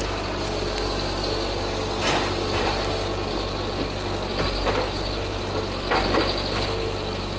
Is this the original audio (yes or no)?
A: yes